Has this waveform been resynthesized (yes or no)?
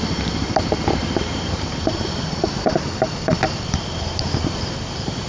yes